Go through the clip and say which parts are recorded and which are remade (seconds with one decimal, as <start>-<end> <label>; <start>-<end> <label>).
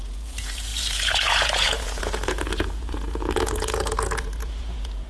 0.0-5.1 remade